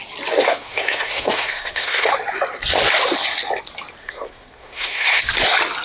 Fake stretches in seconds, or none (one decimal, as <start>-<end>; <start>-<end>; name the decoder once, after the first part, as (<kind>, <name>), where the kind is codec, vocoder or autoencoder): 0.4-2.1 (codec, SNAC); 4.0-5.2